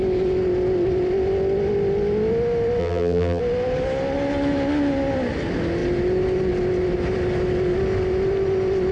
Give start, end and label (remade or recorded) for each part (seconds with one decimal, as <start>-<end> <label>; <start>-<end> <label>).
0.0-2.8 recorded; 2.8-3.4 remade; 3.4-8.9 recorded